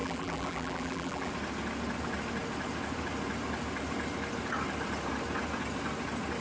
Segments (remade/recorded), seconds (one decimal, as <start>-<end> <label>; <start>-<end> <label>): 0.0-1.3 remade; 1.3-6.4 recorded